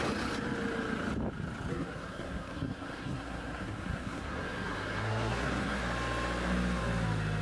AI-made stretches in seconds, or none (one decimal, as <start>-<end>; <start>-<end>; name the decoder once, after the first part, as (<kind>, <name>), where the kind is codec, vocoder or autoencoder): 1.7-5.8 (codec, SNAC)